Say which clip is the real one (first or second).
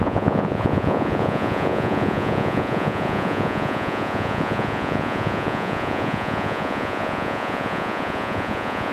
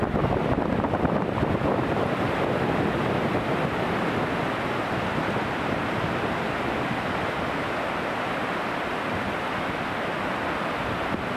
second